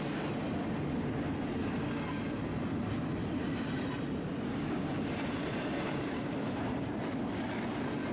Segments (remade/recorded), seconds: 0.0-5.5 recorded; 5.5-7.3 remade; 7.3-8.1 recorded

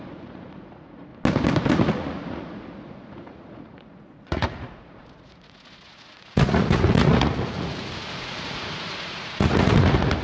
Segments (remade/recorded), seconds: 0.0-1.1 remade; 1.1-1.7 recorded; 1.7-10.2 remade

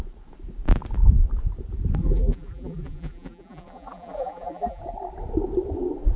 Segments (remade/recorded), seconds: 0.0-2.0 recorded; 2.0-4.8 remade; 4.8-6.2 recorded

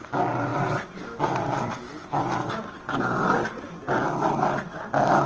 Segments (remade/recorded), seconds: 0.0-5.3 recorded

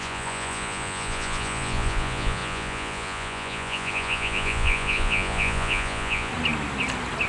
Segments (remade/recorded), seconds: 0.0-6.3 remade; 6.3-7.3 recorded

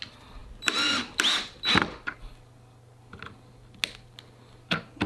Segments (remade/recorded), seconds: 0.0-5.1 recorded

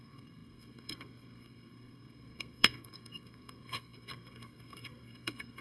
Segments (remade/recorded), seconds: 0.0-5.6 remade